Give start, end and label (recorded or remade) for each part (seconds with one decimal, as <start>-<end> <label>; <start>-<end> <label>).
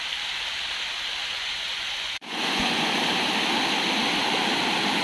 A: 0.0-1.2 recorded; 1.2-2.9 remade; 2.9-5.0 recorded